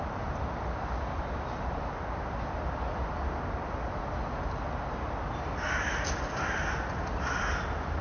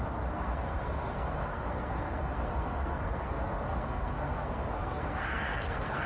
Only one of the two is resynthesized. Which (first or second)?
second